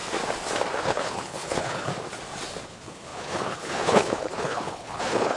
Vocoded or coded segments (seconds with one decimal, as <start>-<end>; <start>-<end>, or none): 0.8-1.9; 2.6-5.4